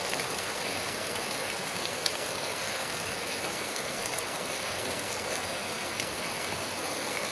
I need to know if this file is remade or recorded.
remade